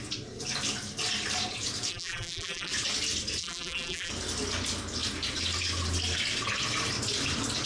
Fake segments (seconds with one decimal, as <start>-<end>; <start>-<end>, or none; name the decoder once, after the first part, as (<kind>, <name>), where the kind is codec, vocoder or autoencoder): 1.9-2.7 (vocoder, BigVGAN v2); 3.4-4.1